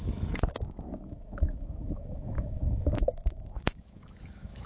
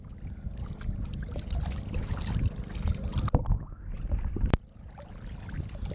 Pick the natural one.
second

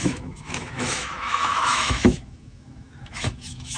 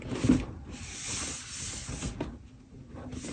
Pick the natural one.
second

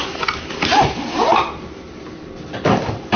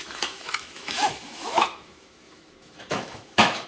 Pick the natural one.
first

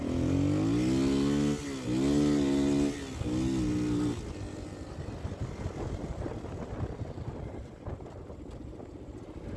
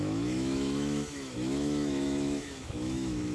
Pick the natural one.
first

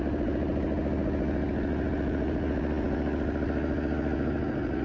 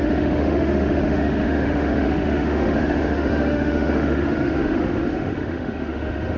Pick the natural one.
first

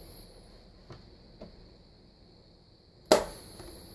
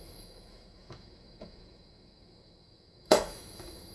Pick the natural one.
first